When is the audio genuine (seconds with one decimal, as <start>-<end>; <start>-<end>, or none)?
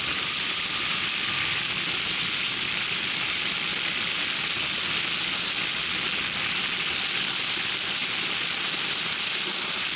3.7-7.1; 8.0-8.8